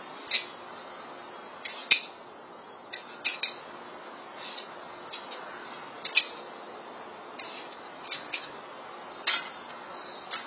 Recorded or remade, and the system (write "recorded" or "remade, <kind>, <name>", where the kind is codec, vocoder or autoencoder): recorded